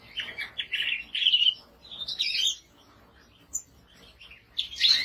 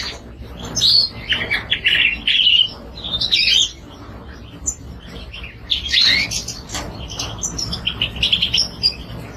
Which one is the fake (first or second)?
second